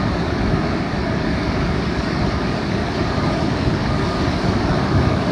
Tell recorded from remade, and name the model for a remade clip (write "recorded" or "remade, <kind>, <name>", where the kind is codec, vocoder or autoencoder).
remade, codec, DAC